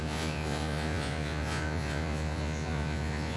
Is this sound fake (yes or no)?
yes